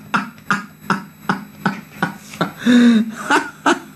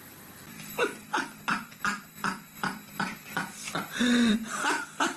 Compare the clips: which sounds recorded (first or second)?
first